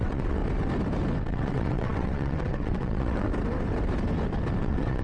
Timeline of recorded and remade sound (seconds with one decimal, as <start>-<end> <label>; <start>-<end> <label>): 0.0-0.4 remade; 0.4-1.3 recorded; 1.3-3.3 remade; 3.3-4.6 recorded; 4.6-5.0 remade